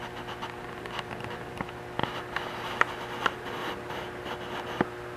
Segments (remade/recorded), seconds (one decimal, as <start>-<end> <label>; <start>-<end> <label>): 0.0-5.2 recorded